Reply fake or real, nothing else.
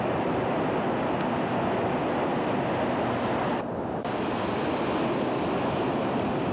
real